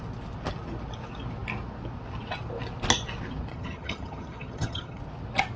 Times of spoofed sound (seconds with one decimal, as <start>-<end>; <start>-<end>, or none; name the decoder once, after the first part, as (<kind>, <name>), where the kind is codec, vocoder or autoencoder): 3.5-5.0 (vocoder, HiFi-GAN)